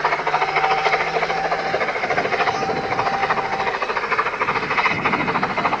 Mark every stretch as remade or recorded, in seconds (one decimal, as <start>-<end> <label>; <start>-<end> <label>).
0.0-5.8 recorded

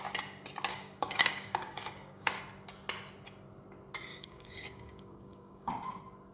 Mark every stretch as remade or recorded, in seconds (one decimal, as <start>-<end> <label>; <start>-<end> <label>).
0.0-0.7 recorded; 0.7-2.4 remade; 2.4-4.1 recorded; 4.1-5.7 remade; 5.7-6.3 recorded

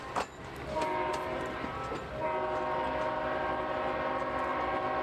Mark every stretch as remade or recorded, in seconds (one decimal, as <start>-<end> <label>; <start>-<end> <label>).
0.0-1.1 recorded; 1.1-1.7 remade; 1.7-5.0 recorded

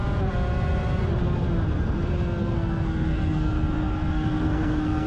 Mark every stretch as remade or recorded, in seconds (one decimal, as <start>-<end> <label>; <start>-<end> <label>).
0.0-2.4 recorded; 2.4-5.1 remade

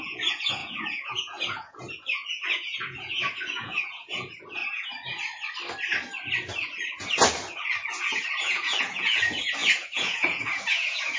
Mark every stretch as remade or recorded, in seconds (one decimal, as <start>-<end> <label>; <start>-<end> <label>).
0.0-4.6 remade; 4.6-7.9 recorded; 7.9-11.2 remade

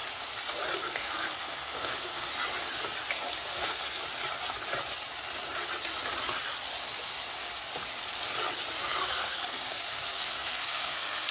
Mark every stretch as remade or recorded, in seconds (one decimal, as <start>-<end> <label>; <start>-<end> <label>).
0.0-0.8 recorded; 0.8-2.3 remade; 2.3-3.5 recorded; 3.5-4.0 remade; 4.0-8.8 recorded; 8.8-11.3 remade

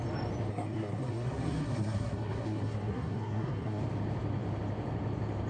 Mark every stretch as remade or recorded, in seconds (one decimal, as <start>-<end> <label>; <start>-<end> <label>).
0.0-0.5 recorded; 0.5-3.8 remade; 3.8-5.5 recorded